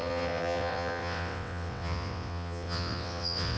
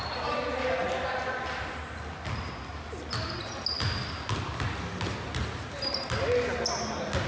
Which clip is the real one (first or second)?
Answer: second